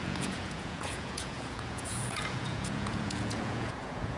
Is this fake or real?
fake